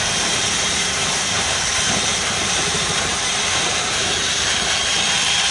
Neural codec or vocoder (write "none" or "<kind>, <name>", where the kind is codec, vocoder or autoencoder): vocoder, BigVGAN v2